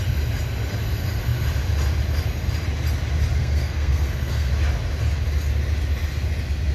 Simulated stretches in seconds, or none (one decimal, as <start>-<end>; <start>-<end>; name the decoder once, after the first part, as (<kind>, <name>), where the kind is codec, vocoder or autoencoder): 3.4-4.5 (codec, SNAC)